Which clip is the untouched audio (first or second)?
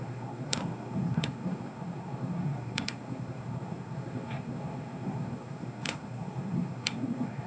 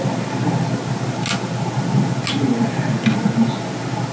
second